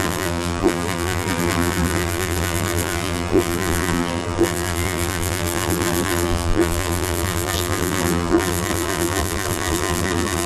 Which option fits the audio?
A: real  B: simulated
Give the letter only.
B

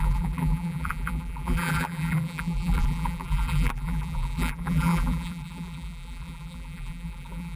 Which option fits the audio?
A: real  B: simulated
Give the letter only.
B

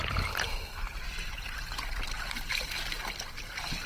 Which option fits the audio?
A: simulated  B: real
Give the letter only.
A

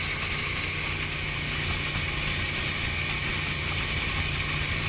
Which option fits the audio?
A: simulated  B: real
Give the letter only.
B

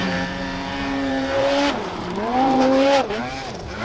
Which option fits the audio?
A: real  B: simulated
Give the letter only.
B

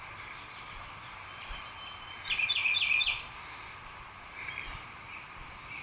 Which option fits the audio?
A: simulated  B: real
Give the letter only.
B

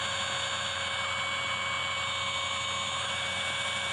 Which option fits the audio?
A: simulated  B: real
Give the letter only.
B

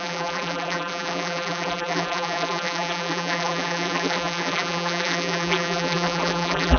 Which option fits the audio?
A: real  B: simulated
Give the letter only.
B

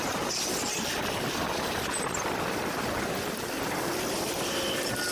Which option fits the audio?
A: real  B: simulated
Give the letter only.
A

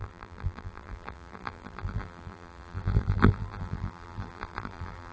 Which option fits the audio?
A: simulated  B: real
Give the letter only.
A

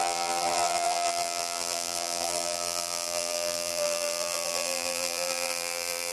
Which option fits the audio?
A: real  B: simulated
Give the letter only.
B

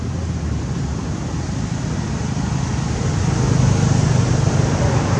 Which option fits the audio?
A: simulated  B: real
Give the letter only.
B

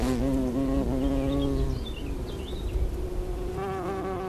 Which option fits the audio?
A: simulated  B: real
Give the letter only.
B